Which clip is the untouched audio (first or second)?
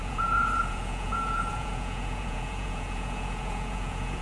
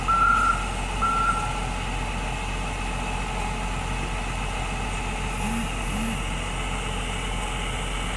second